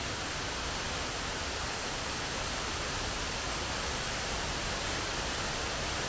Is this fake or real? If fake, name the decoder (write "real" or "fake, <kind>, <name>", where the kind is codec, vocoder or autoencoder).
real